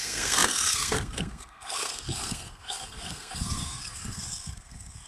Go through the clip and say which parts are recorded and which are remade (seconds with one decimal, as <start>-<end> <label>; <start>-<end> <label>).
0.0-5.1 remade